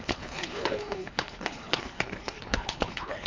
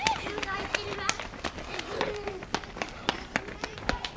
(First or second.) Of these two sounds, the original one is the second